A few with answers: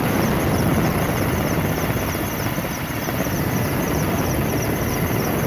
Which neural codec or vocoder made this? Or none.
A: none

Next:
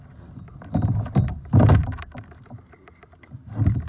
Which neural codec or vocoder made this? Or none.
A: none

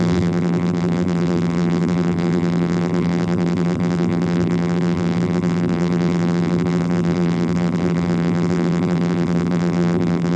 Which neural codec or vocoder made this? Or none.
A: vocoder, BigVGAN v2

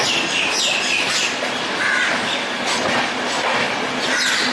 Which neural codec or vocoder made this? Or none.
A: none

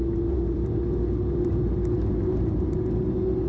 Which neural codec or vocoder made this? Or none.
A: none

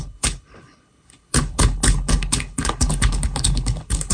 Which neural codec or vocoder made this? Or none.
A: codec, HILCodec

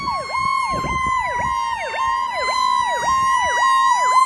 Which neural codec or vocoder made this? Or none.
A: none